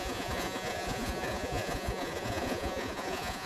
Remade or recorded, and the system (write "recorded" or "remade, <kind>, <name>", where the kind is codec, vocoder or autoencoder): remade, vocoder, Vocos